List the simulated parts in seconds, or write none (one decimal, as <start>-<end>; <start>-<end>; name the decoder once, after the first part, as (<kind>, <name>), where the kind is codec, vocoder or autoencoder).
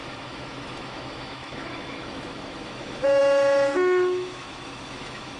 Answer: 0.0-5.4 (autoencoder, DAC-VAE)